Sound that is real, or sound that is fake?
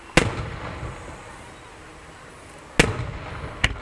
real